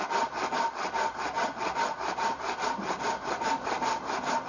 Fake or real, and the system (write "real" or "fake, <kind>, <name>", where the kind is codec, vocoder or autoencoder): real